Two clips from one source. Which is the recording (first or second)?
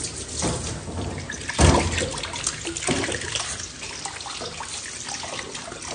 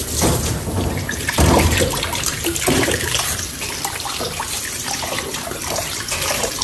first